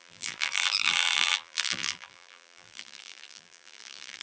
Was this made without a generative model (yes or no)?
no